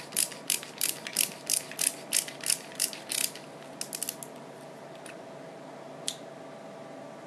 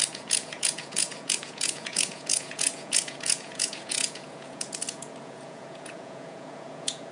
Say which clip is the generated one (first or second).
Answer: second